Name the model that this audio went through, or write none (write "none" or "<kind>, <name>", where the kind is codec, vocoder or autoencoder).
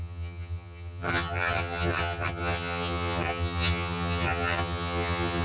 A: vocoder, HiFi-GAN